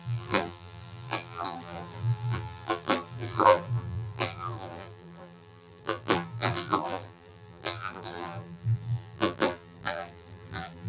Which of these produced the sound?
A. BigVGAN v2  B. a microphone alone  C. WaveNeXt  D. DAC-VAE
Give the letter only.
A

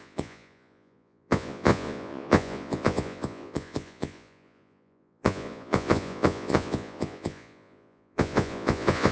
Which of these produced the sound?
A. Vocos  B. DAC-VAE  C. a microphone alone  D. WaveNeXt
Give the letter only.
A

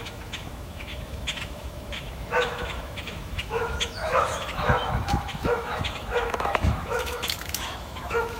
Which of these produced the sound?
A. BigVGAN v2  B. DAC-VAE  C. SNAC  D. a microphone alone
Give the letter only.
B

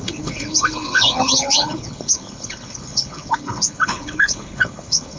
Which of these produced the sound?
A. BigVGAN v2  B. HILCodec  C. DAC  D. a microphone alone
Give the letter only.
B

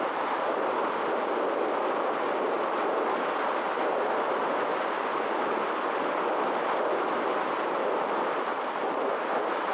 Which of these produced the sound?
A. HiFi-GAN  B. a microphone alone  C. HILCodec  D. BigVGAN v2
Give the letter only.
B